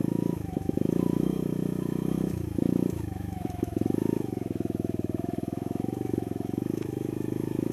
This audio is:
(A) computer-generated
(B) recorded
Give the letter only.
A